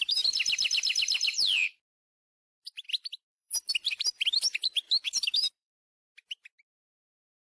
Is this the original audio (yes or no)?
no